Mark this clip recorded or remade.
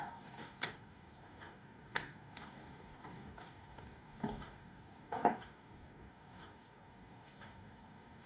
remade